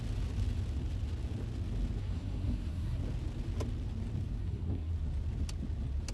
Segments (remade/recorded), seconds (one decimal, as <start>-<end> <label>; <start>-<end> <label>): 0.0-2.0 recorded; 2.0-3.0 remade; 3.0-4.4 recorded; 4.4-4.9 remade; 4.9-6.1 recorded